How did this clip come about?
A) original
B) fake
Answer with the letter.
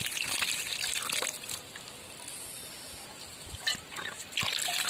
A